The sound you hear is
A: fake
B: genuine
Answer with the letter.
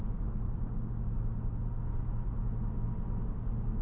B